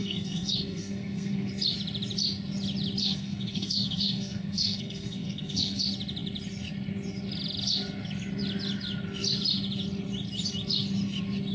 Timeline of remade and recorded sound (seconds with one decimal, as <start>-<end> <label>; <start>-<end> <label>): 0.0-1.5 remade; 1.5-3.0 recorded; 3.0-5.8 remade; 5.8-11.5 recorded